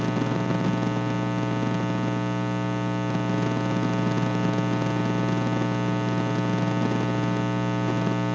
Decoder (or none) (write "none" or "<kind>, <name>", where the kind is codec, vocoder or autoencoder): none